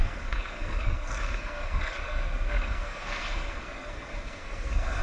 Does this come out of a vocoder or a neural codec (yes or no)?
yes